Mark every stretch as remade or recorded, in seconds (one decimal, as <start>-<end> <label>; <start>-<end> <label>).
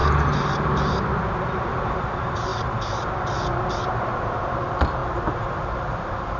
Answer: 0.0-1.3 recorded; 1.3-5.0 remade; 5.0-5.5 recorded; 5.5-6.4 remade